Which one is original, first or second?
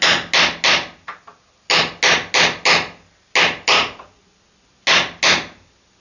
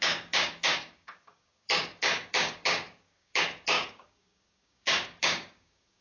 first